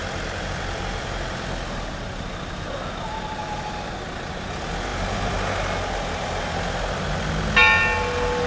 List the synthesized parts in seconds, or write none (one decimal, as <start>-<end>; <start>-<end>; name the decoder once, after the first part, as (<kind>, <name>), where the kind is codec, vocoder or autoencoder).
none